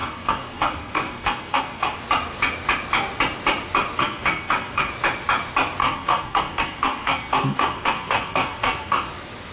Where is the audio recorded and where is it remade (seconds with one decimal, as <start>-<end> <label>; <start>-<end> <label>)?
0.0-2.0 remade; 2.0-4.0 recorded; 4.0-4.9 remade; 4.9-5.8 recorded; 5.8-9.1 remade; 9.1-9.5 recorded